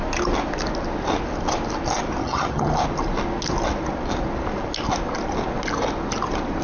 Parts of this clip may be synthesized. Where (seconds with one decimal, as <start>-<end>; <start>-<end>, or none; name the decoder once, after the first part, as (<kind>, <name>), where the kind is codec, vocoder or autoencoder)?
2.2-2.7 (vocoder, HiFi-GAN)